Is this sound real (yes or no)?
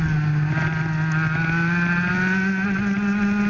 yes